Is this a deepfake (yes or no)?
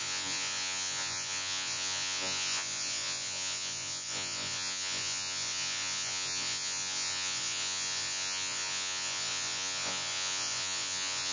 yes